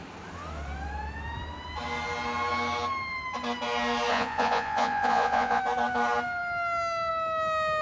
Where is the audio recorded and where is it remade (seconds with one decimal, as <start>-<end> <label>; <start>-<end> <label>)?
0.0-4.1 recorded; 4.1-5.6 remade; 5.6-7.8 recorded